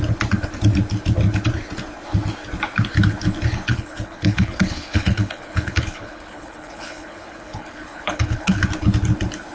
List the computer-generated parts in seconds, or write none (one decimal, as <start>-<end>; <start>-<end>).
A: 3.7-8.6